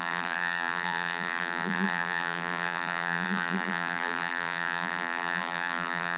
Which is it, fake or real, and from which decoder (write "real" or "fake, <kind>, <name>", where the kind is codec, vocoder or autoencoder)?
fake, vocoder, BigVGAN v2